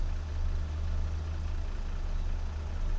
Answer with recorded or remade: recorded